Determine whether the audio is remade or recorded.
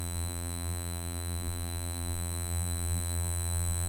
remade